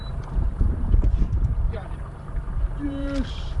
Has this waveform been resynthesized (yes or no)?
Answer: yes